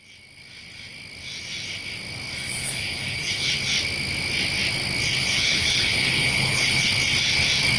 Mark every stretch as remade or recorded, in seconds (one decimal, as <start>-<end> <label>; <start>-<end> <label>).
0.0-2.6 recorded; 2.6-3.5 remade; 3.5-5.2 recorded; 5.2-6.9 remade; 6.9-7.8 recorded